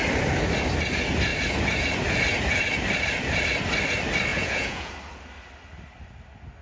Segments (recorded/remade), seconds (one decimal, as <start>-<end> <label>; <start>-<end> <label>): 0.0-4.3 recorded; 4.3-4.9 remade; 4.9-6.6 recorded